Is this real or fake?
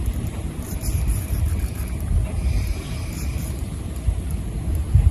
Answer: fake